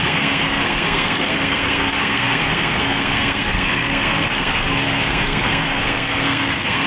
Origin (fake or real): fake